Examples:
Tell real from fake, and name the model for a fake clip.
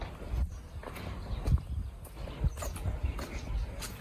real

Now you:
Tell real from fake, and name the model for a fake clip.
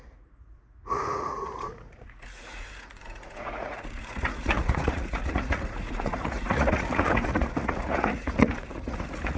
fake, vocoder, Vocos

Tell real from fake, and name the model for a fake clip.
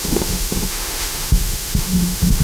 fake, autoencoder, DAC-VAE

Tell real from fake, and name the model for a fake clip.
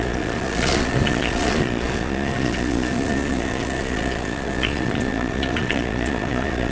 fake, vocoder, Vocos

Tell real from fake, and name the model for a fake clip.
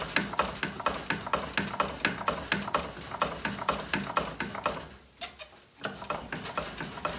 real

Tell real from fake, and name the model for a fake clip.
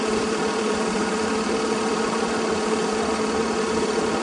fake, vocoder, BigVGAN v2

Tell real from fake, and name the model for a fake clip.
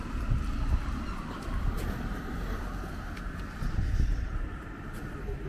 real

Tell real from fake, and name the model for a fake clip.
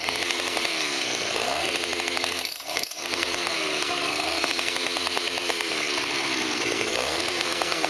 fake, codec, SNAC